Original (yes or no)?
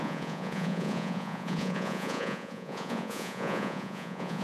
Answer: no